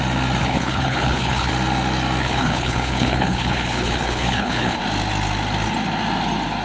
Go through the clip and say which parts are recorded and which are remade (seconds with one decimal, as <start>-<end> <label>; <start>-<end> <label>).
0.0-0.4 recorded; 0.4-1.5 remade; 1.5-2.2 recorded; 2.2-4.8 remade; 4.8-6.6 recorded